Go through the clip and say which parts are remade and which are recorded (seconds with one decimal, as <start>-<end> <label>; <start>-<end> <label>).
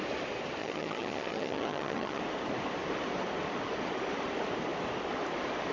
0.0-0.6 recorded; 0.6-2.2 remade; 2.2-5.7 recorded